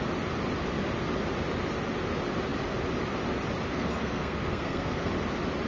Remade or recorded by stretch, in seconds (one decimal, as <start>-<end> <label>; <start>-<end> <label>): 0.0-3.7 recorded; 3.7-5.1 remade; 5.1-5.7 recorded